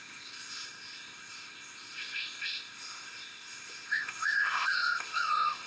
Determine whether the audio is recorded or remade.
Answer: remade